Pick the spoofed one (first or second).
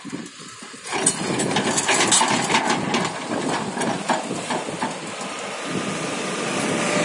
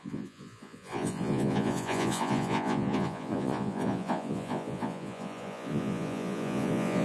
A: second